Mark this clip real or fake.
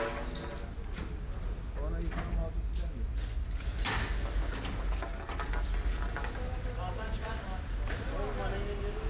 real